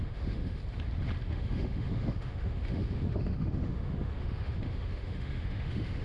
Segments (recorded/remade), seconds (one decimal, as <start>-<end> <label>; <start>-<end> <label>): 0.0-0.6 remade; 0.6-1.3 recorded; 1.3-6.0 remade

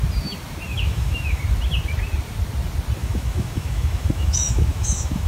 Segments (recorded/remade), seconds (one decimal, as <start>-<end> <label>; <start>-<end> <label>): 0.0-0.7 recorded; 0.7-1.4 remade; 1.4-3.0 recorded; 3.0-5.3 remade

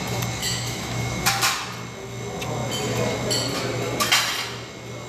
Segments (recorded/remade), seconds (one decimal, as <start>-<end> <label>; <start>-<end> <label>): 0.0-0.4 recorded; 0.4-1.2 remade; 1.2-5.1 recorded

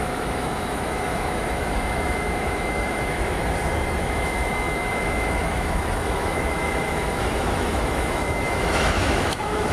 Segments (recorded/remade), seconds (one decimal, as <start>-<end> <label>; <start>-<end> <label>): 0.0-3.4 remade; 3.4-4.0 recorded; 4.0-9.7 remade

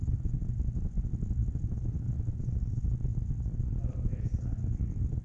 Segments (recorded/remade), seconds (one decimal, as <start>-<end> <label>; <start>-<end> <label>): 0.0-5.2 recorded

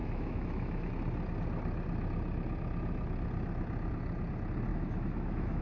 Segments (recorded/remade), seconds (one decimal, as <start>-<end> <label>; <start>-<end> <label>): 0.0-0.9 remade; 0.9-4.7 recorded; 4.7-5.6 remade

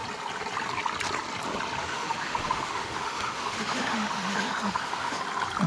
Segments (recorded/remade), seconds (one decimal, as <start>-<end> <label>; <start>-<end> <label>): 0.0-1.8 recorded; 1.8-5.2 remade; 5.2-5.7 recorded

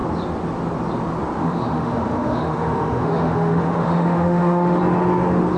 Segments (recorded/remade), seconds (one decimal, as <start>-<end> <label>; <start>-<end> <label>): 0.0-1.4 recorded; 1.4-4.8 remade; 4.8-5.6 recorded